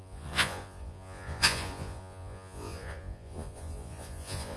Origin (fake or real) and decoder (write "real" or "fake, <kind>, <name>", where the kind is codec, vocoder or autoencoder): fake, vocoder, Vocos